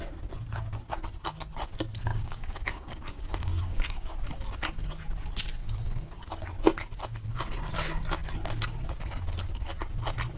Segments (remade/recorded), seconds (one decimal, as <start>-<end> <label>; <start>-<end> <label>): 0.0-2.1 recorded; 2.1-4.1 remade; 4.1-5.6 recorded; 5.6-6.2 remade; 6.2-10.4 recorded